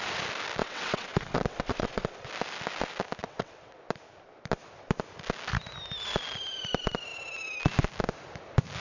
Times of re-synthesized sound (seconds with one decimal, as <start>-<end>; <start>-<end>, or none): 0.6-2.3; 3.2-3.8